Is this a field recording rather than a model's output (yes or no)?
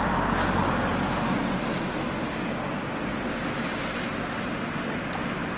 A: yes